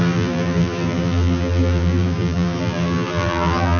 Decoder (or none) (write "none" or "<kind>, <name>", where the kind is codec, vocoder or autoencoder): vocoder, BigVGAN v2